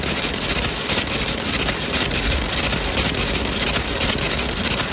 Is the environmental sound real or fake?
real